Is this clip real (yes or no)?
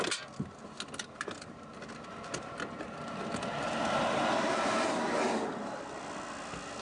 yes